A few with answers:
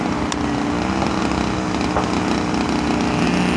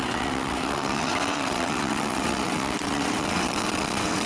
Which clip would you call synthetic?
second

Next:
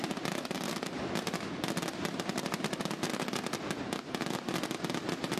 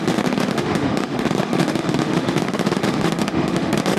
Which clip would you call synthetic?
second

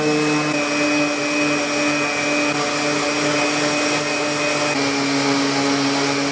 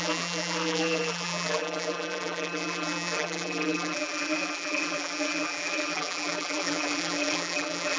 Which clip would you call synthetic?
second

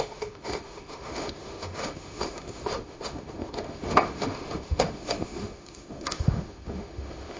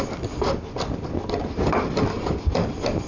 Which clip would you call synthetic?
first